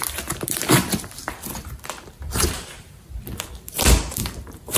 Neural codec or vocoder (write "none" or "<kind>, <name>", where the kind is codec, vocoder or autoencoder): vocoder, BigVGAN v2